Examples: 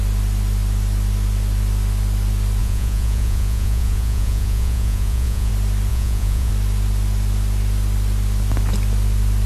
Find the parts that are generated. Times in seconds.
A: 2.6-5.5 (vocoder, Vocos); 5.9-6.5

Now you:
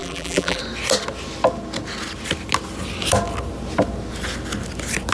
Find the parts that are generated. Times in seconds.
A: 0.0-0.6 (vocoder, BigVGAN v2)